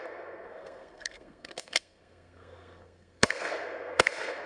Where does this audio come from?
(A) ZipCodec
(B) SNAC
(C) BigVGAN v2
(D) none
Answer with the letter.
B